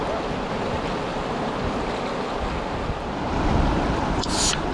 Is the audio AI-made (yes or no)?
no